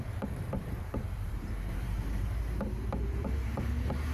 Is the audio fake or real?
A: fake